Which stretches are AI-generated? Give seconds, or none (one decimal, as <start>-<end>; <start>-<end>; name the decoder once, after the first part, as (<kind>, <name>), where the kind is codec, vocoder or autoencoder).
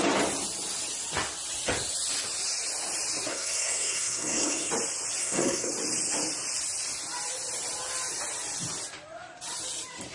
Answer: 3.3-4.7 (codec, SNAC); 5.2-5.7